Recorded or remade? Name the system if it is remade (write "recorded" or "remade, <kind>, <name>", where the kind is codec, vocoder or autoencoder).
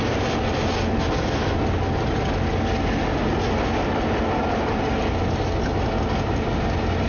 recorded